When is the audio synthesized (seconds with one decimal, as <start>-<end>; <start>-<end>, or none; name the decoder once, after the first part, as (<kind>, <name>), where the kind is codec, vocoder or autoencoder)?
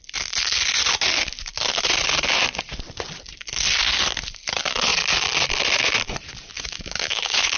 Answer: 6.5-7.6 (autoencoder, DAC-VAE)